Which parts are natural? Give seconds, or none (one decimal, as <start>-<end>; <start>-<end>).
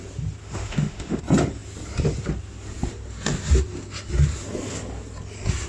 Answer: 0.0-0.4; 1.2-5.7